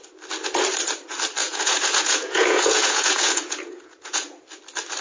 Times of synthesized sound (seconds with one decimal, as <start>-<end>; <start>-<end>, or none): 1.4-4.4